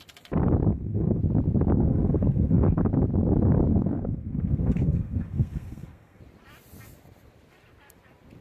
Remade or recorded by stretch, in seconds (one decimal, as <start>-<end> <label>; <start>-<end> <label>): 0.0-0.7 recorded; 0.7-1.2 remade; 1.2-1.7 recorded; 1.7-2.9 remade; 2.9-3.7 recorded; 3.7-6.2 remade; 6.2-8.4 recorded